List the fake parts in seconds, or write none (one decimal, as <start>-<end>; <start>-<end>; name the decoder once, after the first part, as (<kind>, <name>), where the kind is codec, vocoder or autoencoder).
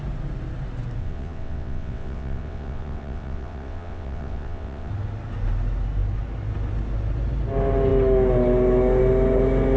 1.0-4.9 (vocoder, WaveNeXt)